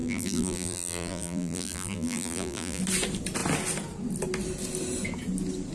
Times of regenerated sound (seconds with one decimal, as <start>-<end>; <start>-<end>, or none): 0.0-2.8